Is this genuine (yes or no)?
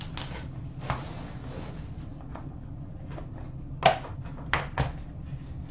yes